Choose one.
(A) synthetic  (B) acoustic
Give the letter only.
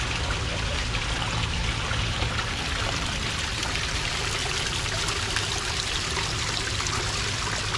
B